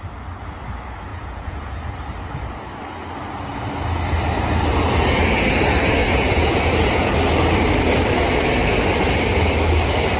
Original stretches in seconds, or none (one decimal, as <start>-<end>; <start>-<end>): 0.0-1.1; 1.9-6.0; 7.1-10.2